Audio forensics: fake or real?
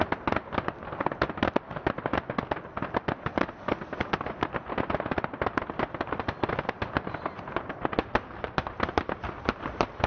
real